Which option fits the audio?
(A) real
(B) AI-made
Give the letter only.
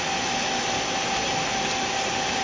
A